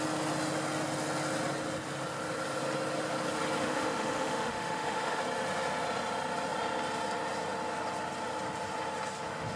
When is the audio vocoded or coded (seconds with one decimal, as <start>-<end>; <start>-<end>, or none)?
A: 3.6-5.2